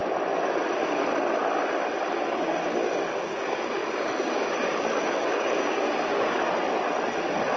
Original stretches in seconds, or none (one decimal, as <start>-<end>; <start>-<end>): 0.0-2.1; 6.4-7.6